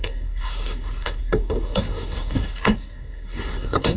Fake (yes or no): yes